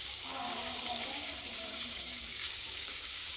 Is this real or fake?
fake